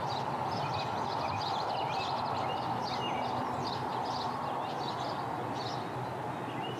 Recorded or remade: recorded